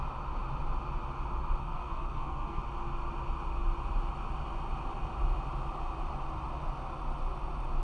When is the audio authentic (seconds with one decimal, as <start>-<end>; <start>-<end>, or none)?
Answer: 0.0-1.6; 2.6-7.8